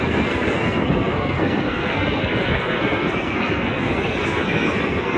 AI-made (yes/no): yes